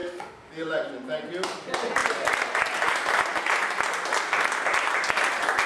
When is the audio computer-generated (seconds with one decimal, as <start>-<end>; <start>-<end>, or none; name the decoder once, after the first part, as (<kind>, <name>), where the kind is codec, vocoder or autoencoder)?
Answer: 0.0-0.5 (autoencoder, DAC-VAE)